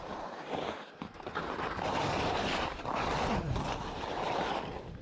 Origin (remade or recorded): remade